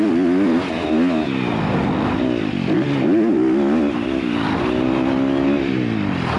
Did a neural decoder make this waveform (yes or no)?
no